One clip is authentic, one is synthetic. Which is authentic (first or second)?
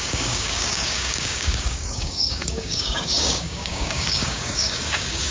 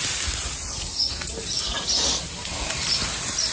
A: second